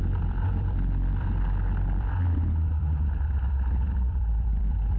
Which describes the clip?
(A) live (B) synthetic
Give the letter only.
B